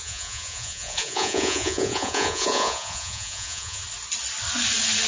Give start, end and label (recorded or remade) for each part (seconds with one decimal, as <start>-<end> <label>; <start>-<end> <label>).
0.0-3.8 remade; 3.8-5.1 recorded